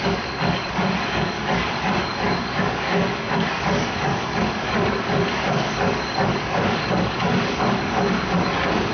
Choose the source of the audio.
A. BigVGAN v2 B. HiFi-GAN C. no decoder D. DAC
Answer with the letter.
D